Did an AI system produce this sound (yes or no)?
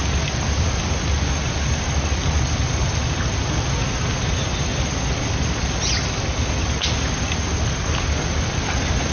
no